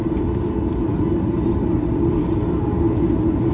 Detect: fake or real real